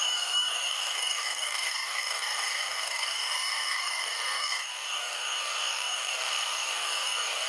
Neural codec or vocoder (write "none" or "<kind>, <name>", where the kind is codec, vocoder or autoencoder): codec, DAC